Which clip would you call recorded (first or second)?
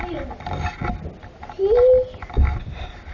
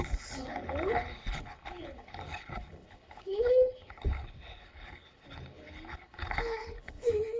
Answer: first